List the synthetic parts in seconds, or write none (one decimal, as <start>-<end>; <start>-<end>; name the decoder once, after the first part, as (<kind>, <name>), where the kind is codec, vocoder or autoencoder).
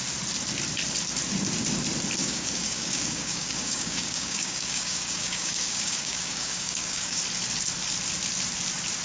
2.2-7.2 (codec, DAC)